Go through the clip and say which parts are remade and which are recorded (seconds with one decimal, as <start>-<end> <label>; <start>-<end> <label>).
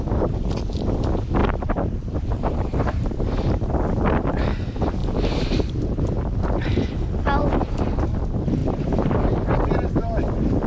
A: 0.0-1.4 recorded; 1.4-3.7 remade; 3.7-5.0 recorded; 5.0-6.0 remade; 6.0-8.6 recorded; 8.6-9.7 remade; 9.7-10.7 recorded